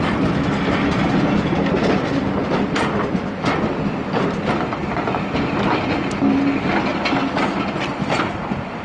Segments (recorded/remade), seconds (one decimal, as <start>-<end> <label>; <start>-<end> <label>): 0.0-8.8 recorded

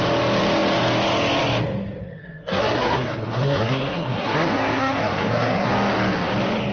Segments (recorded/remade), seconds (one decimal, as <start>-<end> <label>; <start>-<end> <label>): 0.0-2.2 recorded; 2.2-5.7 remade; 5.7-6.7 recorded

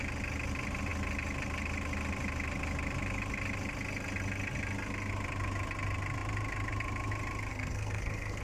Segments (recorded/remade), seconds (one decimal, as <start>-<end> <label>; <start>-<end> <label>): 0.0-7.5 recorded; 7.5-8.4 remade

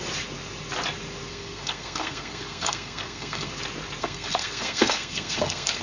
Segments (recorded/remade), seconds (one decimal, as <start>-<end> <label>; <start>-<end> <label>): 0.0-1.3 recorded; 1.3-3.5 remade; 3.5-4.0 recorded; 4.0-5.8 remade